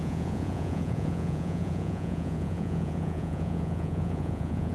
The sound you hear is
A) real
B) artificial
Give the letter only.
B